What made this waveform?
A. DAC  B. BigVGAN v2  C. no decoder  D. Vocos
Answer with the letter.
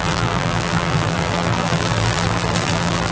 B